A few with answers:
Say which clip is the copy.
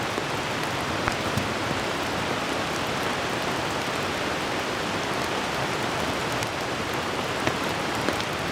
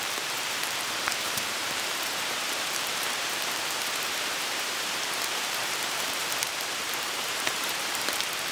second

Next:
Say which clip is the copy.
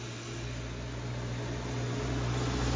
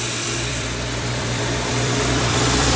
second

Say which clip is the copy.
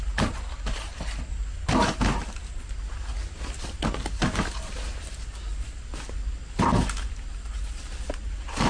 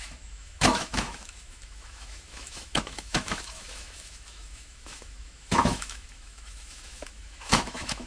second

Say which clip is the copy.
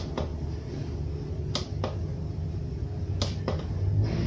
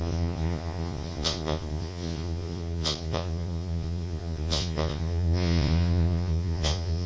second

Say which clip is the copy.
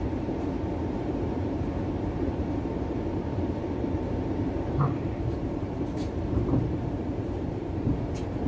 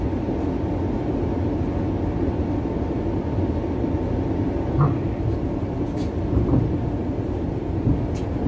first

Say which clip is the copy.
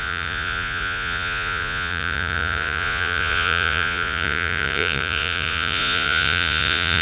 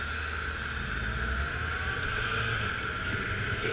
first